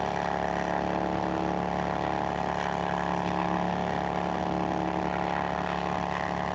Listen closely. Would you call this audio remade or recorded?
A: recorded